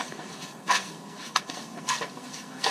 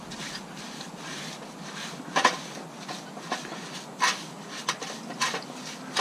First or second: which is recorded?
second